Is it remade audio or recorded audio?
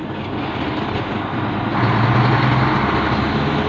recorded